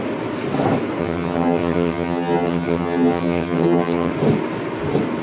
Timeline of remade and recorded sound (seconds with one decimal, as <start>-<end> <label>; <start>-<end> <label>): 0.0-1.0 recorded; 1.0-4.1 remade; 4.1-5.2 recorded